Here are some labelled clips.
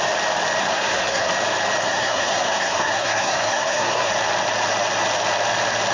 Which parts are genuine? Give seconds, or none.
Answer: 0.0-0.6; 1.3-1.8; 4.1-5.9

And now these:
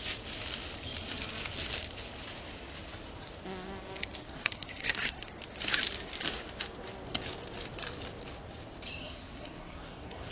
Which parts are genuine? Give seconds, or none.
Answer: 0.0-4.2; 5.3-9.0

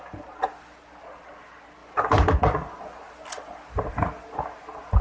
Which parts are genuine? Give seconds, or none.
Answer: 0.0-5.0

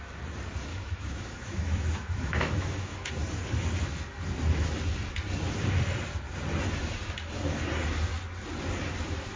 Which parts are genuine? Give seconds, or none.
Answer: 0.0-0.7; 3.1-9.4